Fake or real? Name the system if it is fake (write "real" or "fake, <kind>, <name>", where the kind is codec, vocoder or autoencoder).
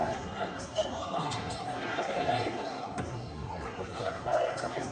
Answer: fake, codec, SNAC